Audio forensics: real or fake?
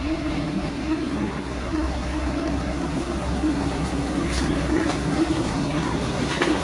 fake